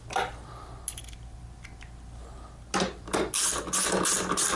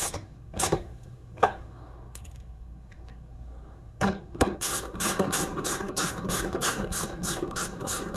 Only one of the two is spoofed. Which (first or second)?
second